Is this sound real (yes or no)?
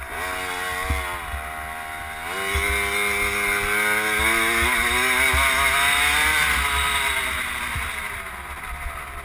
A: yes